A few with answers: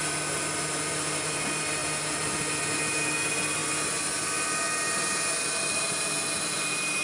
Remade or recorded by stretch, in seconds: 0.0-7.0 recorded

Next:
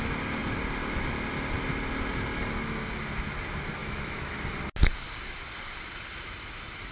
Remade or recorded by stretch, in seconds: 0.0-3.8 recorded; 3.8-4.3 remade; 4.3-6.9 recorded

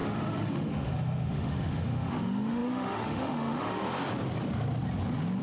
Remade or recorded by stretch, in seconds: 0.0-3.8 remade; 3.8-5.4 recorded